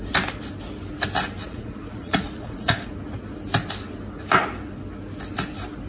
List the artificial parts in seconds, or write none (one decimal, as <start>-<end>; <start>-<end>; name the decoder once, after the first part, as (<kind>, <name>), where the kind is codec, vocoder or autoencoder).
1.5-2.9 (vocoder, Vocos)

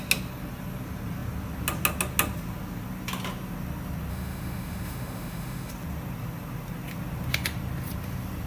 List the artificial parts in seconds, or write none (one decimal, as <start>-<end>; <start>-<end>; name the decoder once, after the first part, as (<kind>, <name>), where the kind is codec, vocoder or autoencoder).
4.1-5.7 (autoencoder, DAC-VAE)

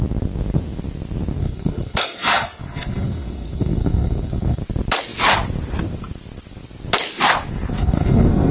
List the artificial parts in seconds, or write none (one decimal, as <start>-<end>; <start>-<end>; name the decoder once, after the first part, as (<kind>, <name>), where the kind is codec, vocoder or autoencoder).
1.4-4.6 (codec, SNAC); 7.7-8.5

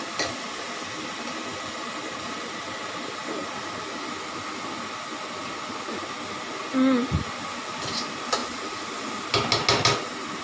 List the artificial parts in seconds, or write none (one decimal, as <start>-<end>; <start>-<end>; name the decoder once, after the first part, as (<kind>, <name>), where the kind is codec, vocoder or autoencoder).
1.5-2.5 (vocoder, BigVGAN v2); 8.4-8.9

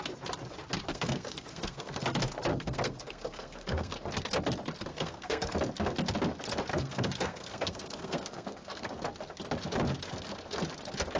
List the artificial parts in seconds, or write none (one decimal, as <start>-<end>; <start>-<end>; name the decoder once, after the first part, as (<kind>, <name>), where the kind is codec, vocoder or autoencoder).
0.9-1.9 (codec, SNAC); 2.5-3.9; 4.9-5.5; 6.7-8.9

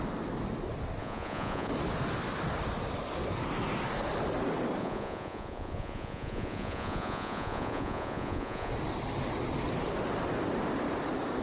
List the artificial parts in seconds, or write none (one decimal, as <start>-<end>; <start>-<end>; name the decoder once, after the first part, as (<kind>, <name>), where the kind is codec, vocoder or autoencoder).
1.0-1.7 (vocoder, Vocos); 4.8-8.7

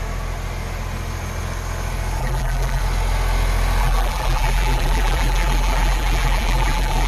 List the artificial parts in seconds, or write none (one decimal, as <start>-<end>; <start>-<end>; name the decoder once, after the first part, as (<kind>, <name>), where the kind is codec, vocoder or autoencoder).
2.2-2.8 (vocoder, BigVGAN v2); 3.8-7.1

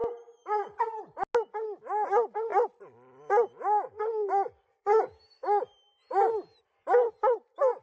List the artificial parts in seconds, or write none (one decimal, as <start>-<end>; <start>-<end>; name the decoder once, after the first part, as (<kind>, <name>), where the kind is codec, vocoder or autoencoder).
0.0-1.0 (vocoder, BigVGAN v2)